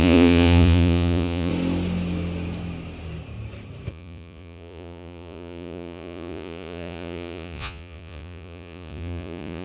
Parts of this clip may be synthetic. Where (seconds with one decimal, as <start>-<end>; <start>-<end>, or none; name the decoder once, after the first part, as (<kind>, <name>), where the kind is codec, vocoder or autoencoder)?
0.0-1.5 (vocoder, Vocos); 3.9-9.6